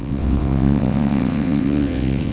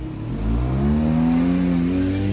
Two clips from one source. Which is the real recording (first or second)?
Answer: second